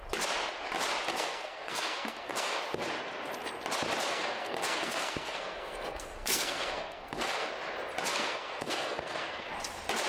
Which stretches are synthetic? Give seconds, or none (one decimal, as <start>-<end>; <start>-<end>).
1.1-2.6; 4.1-7.5; 8.1-9.5